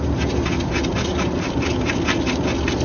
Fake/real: real